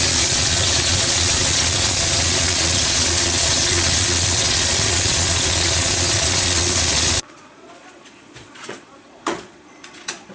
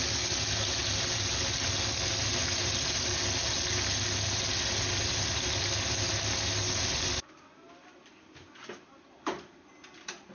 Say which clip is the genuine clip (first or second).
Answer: second